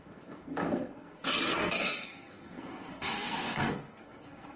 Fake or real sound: fake